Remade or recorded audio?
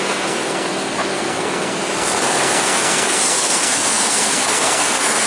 remade